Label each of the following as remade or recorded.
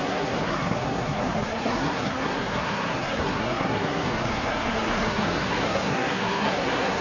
remade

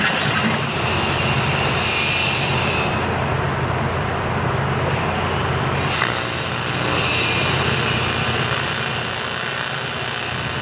recorded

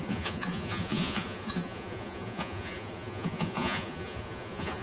remade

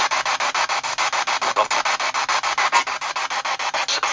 recorded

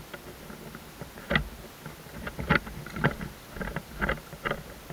recorded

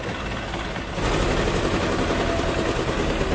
recorded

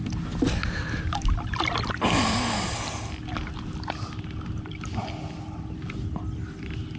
recorded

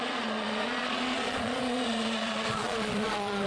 remade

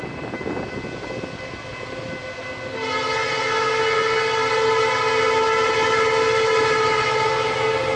recorded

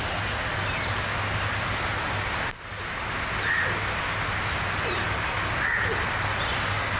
recorded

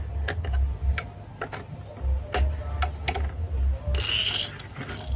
recorded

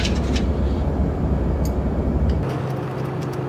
recorded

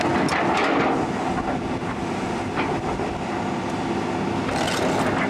recorded